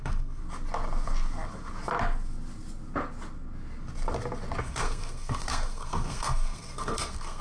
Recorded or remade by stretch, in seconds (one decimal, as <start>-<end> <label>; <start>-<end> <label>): 0.0-0.4 remade; 0.4-4.6 recorded; 4.6-7.4 remade